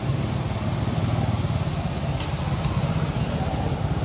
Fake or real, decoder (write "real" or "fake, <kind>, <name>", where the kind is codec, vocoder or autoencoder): real